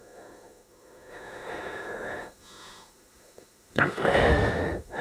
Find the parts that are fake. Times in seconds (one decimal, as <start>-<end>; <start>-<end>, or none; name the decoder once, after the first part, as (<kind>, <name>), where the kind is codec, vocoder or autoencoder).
0.0-5.0 (autoencoder, DAC-VAE)